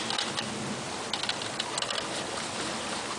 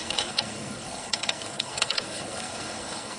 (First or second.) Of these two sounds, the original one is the first